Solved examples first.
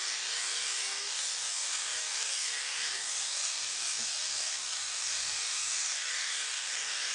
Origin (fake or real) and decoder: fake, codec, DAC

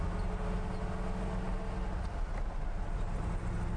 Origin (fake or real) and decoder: real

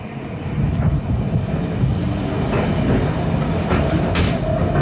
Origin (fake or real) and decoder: real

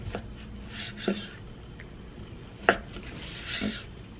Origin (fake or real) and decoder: fake, vocoder, BigVGAN v2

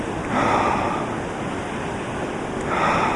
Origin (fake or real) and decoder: real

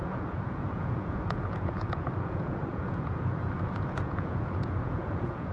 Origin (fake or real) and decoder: fake, vocoder, Vocos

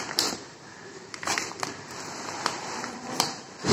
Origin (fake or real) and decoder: fake, vocoder, BigVGAN v2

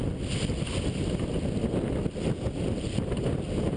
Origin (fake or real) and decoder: real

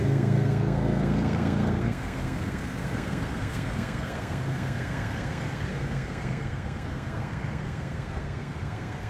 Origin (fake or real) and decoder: fake, codec, SNAC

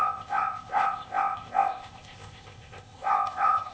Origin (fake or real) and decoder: fake, codec, ZipCodec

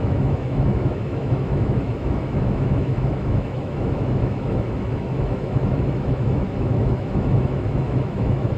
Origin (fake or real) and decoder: fake, autoencoder, DAC-VAE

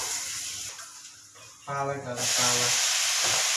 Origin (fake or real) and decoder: real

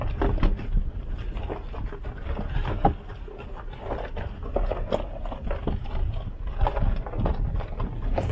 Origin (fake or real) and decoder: real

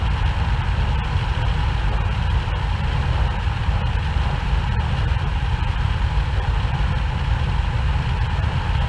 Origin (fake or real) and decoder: fake, vocoder, BigVGAN v2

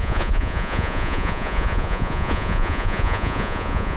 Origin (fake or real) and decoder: fake, vocoder, Vocos